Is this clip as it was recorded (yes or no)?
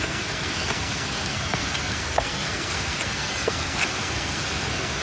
no